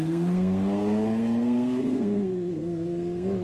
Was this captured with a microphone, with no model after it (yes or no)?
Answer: no